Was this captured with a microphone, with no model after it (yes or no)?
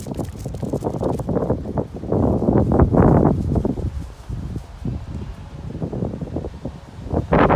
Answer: yes